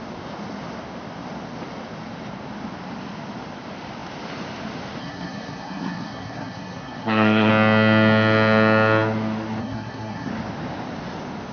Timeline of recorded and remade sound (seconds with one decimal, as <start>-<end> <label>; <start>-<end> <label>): 0.0-5.0 recorded; 5.0-7.5 remade; 7.5-9.6 recorded; 9.6-10.3 remade; 10.3-11.5 recorded